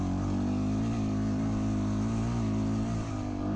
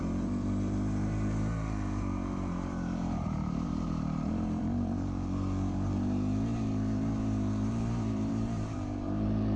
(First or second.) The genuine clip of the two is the first